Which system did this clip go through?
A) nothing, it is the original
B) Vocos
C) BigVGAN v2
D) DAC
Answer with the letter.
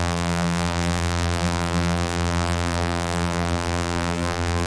C